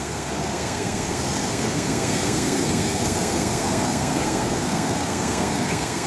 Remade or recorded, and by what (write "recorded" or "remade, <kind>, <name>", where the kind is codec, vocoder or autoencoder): remade, codec, SNAC